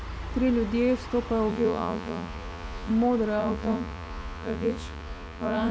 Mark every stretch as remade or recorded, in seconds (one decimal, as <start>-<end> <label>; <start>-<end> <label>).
0.0-1.5 recorded; 1.5-2.9 remade; 2.9-3.4 recorded; 3.4-5.7 remade

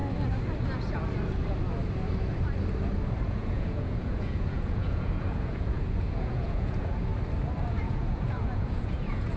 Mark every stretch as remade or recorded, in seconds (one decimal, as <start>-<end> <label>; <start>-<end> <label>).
0.0-3.2 recorded; 3.2-7.1 remade; 7.1-7.7 recorded; 7.7-9.4 remade

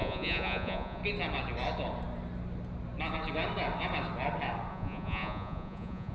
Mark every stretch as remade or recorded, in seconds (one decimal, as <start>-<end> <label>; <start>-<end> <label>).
0.0-1.0 remade; 1.0-4.7 recorded; 4.7-6.1 remade

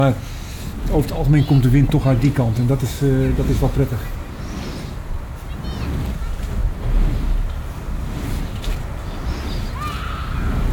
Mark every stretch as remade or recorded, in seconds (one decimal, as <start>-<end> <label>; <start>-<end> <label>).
0.0-10.7 recorded